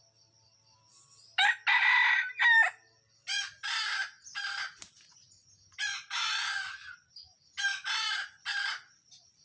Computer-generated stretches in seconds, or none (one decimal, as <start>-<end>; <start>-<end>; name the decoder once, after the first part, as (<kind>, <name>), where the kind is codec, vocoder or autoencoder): none